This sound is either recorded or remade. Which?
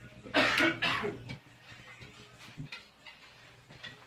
recorded